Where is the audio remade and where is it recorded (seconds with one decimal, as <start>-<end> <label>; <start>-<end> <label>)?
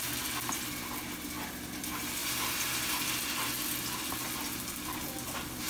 0.0-5.7 recorded